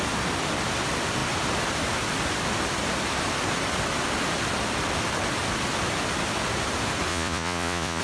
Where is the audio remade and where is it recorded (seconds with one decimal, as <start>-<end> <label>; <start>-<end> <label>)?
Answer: 0.0-7.1 recorded; 7.1-8.0 remade